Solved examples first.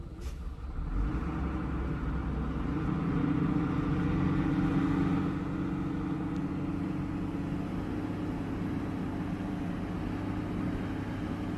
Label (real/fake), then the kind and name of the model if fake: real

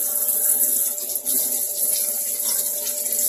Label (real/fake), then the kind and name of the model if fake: real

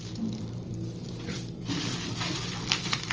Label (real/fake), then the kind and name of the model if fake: fake, vocoder, BigVGAN v2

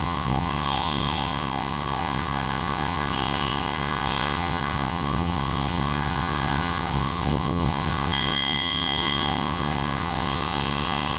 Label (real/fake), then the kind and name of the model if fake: fake, vocoder, WaveNeXt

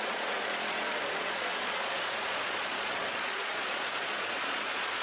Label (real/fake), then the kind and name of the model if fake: fake, vocoder, Vocos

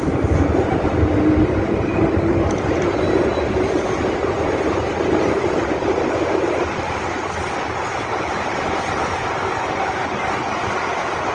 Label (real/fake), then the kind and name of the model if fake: real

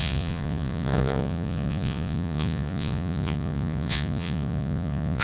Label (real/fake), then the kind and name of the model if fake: fake, vocoder, Vocos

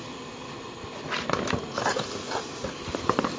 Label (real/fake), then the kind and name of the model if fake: real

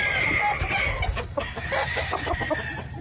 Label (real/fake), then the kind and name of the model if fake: real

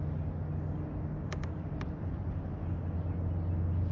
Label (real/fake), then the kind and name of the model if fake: real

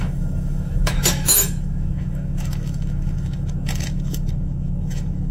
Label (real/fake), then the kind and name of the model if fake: fake, autoencoder, DAC-VAE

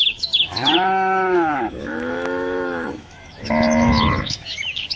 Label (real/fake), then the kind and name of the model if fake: fake, autoencoder, DAC-VAE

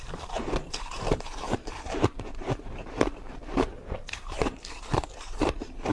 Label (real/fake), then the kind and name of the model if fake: fake, vocoder, BigVGAN v2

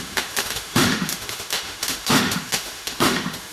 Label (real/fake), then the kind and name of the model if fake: fake, autoencoder, DAC-VAE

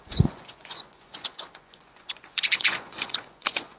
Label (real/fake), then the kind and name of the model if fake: fake, vocoder, Vocos